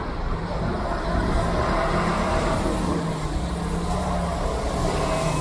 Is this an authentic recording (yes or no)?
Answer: yes